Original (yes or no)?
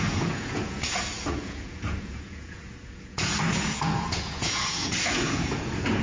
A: no